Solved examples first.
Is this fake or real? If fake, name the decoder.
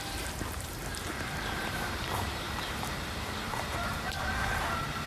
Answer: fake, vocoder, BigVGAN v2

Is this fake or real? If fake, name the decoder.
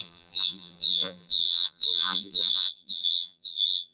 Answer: fake, vocoder, BigVGAN v2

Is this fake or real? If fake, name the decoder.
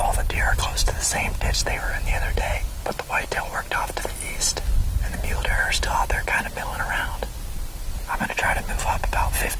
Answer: real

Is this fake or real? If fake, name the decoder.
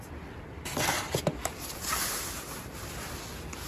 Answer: fake, vocoder, BigVGAN v2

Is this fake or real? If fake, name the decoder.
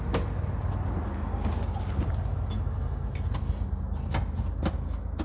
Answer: real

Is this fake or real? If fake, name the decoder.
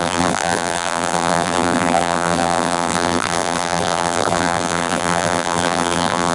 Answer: fake, vocoder, BigVGAN v2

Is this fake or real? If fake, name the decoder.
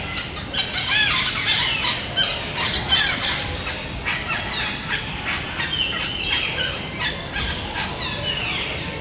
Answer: real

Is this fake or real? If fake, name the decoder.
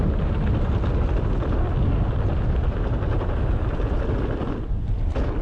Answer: real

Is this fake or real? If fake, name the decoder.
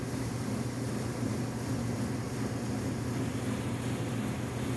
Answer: real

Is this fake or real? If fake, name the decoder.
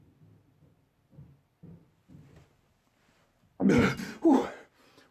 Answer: real